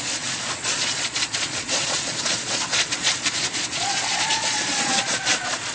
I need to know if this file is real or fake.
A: fake